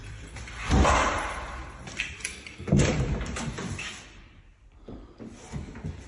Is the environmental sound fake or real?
fake